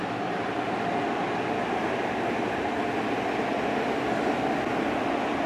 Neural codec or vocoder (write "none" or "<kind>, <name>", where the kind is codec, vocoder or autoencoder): none